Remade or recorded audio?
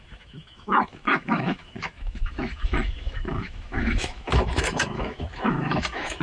remade